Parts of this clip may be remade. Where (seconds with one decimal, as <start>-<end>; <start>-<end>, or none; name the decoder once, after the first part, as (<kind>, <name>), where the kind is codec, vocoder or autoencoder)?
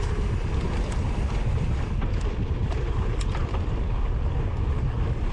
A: 0.0-5.3 (vocoder, BigVGAN v2)